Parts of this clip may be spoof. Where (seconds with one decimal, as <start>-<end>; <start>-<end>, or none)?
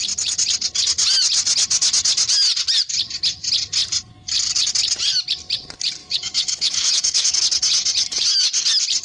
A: 6.0-7.4